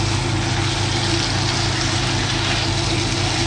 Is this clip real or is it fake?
real